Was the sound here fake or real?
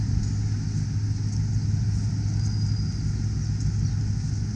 real